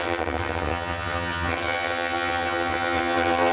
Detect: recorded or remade remade